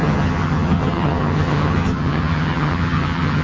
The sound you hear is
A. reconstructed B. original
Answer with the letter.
A